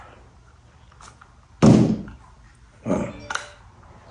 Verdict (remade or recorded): recorded